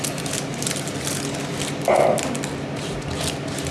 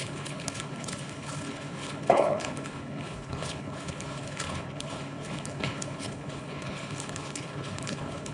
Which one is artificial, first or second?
second